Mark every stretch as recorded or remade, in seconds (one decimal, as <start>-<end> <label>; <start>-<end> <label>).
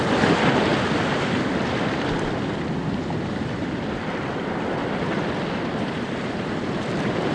0.0-0.7 remade; 0.7-3.3 recorded; 3.3-7.3 remade